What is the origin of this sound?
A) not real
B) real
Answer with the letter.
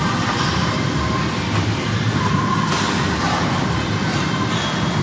B